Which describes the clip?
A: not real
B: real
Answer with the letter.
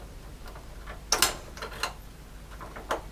B